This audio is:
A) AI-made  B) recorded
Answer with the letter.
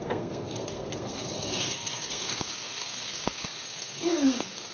A